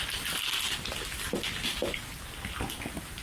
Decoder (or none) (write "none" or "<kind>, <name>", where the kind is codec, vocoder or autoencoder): none